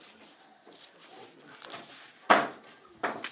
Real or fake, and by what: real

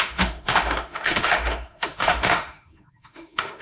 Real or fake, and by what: fake, autoencoder, DAC-VAE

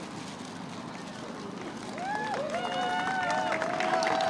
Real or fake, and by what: real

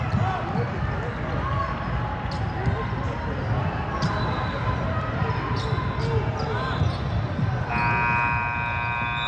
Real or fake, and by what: real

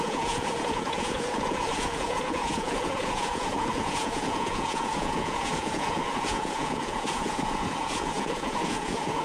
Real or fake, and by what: fake, vocoder, Vocos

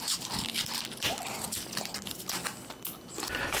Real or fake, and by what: real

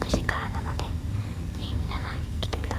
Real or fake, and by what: fake, codec, SNAC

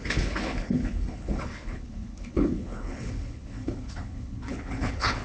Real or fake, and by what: fake, codec, HILCodec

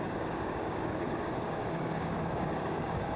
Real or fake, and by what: fake, codec, DAC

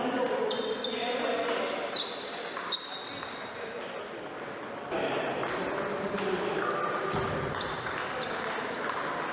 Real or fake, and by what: real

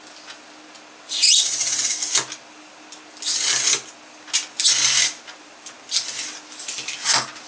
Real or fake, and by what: real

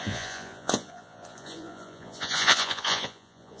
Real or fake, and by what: fake, vocoder, Vocos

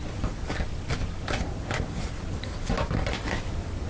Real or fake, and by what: real